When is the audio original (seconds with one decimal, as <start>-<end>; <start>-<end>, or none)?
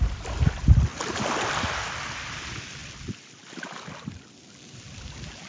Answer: 0.0-5.5